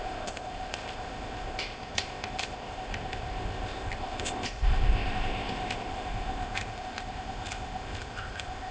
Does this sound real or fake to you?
fake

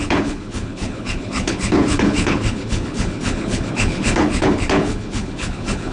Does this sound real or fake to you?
fake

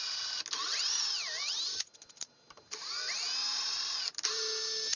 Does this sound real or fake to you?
real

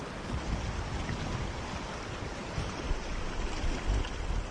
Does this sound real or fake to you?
real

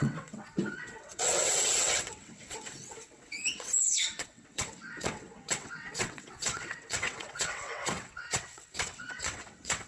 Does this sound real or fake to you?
fake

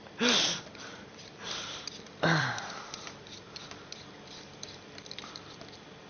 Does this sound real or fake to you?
fake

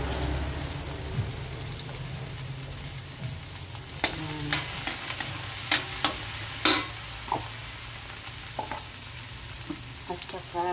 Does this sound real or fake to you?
real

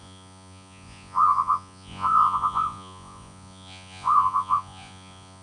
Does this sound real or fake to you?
fake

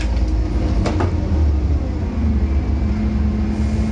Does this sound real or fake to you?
real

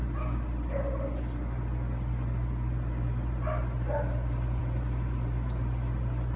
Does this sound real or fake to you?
real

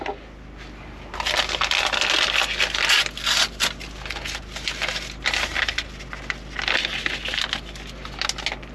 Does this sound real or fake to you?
real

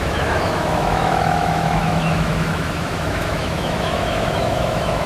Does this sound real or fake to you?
fake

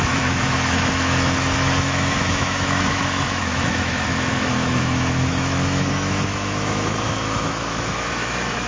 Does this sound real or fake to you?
fake